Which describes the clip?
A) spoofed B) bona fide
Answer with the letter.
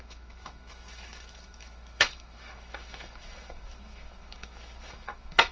A